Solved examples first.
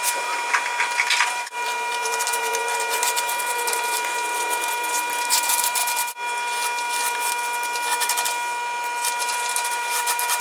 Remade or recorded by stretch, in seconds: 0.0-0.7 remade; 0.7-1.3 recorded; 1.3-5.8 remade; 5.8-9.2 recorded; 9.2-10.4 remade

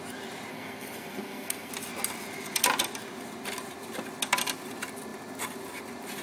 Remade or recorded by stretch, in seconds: 0.0-0.5 recorded; 0.5-1.7 remade; 1.7-6.2 recorded